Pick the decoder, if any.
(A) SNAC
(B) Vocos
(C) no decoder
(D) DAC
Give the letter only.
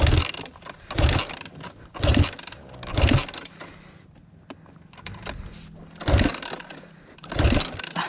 C